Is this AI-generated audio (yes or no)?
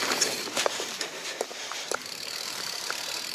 yes